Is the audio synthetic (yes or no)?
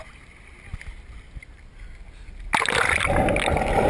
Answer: no